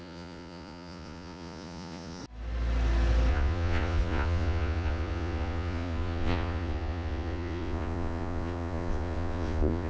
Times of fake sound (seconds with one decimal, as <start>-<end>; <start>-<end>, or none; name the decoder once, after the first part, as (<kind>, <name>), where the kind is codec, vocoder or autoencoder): 0.0-2.2 (vocoder, Vocos); 3.3-9.9